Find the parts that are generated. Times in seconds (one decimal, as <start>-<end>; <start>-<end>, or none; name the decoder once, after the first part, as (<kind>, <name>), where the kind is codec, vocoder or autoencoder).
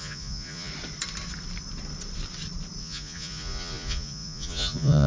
0.0-0.7 (vocoder, Vocos); 2.8-5.1